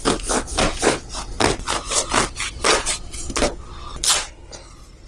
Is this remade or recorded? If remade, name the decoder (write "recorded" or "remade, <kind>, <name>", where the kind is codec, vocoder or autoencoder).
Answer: recorded